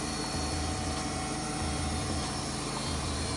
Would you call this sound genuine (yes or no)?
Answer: yes